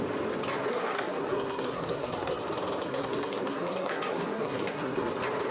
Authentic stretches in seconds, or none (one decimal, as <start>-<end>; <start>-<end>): 0.0-0.7; 2.4-2.9; 5.1-5.5

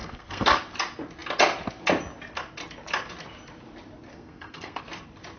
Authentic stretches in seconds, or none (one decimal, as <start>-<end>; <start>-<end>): 0.6-4.1; 4.8-5.4

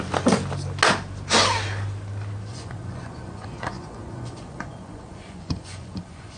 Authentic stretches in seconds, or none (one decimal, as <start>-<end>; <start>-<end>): 0.0-2.5

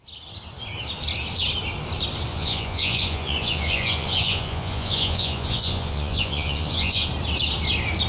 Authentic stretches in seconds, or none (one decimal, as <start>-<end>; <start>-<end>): 0.0-2.3; 7.1-8.1